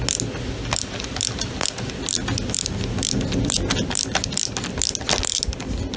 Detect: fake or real real